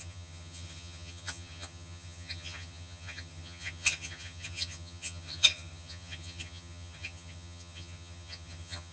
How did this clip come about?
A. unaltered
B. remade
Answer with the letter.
B